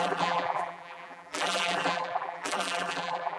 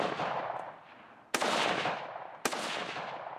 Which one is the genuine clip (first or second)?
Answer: second